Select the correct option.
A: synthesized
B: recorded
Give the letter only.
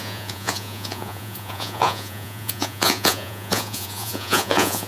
A